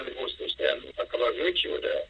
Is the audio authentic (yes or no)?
no